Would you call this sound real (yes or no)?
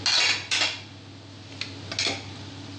yes